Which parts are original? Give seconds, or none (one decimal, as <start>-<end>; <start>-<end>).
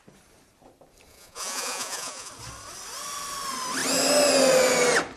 0.0-1.1; 2.3-5.2